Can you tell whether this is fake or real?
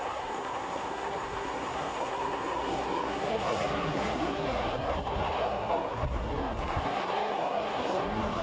fake